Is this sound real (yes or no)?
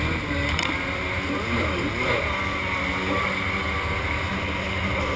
yes